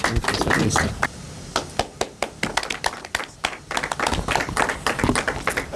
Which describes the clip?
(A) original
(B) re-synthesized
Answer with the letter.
A